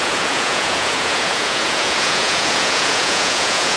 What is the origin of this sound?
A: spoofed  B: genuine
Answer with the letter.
A